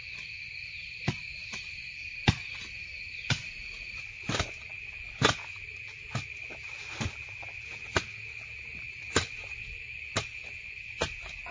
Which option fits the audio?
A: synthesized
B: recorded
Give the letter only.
A